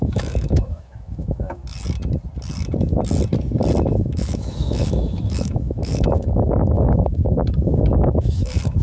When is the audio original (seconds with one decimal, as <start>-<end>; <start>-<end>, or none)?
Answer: 1.6-3.8

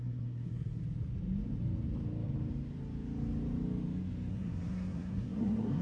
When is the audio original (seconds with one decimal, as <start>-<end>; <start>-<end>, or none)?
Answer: 0.8-4.3

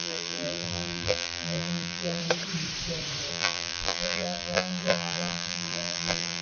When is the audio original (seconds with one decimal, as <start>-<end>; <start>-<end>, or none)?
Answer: 2.2-3.3

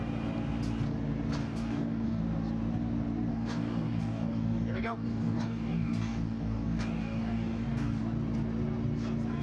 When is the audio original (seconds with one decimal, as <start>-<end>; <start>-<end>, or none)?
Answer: 0.0-1.4; 2.2-3.3; 8.0-9.4

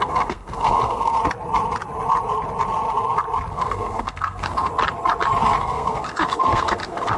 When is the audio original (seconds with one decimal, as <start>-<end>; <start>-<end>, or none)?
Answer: 1.2-3.5; 4.7-5.6